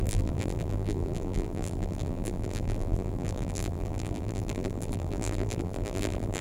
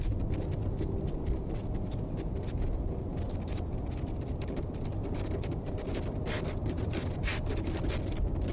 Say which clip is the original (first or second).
second